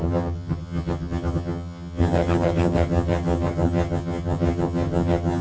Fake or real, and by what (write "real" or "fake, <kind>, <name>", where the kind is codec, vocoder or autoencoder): fake, vocoder, HiFi-GAN